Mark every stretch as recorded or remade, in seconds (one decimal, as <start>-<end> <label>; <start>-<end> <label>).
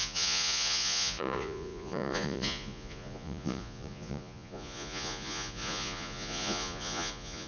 0.0-7.5 remade